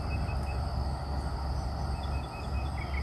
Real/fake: real